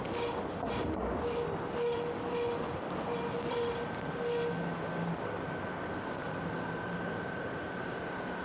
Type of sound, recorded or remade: recorded